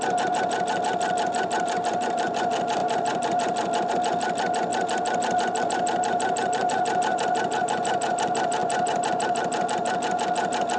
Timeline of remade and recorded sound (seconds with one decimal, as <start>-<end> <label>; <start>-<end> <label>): 0.0-10.8 recorded